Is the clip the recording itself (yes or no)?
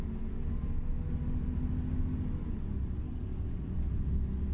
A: yes